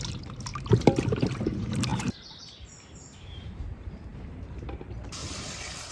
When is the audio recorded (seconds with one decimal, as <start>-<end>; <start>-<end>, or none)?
0.5-1.1; 5.2-5.9